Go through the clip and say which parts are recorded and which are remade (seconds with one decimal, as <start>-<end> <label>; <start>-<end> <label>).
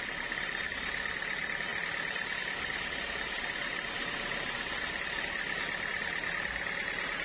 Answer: 0.0-7.2 recorded